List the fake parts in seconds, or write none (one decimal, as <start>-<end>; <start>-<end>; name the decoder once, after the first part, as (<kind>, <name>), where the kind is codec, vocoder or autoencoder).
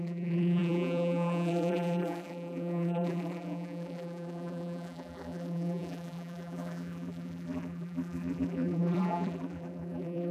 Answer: 0.0-10.3 (vocoder, BigVGAN v2)